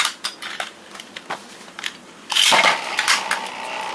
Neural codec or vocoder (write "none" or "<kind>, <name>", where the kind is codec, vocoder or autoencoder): vocoder, BigVGAN v2